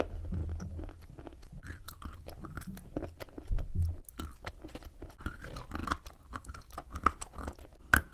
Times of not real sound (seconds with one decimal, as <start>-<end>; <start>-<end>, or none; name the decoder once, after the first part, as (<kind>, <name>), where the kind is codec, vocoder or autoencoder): none